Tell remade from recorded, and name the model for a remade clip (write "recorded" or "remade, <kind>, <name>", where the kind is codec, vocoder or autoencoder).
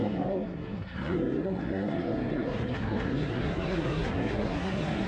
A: remade, codec, SNAC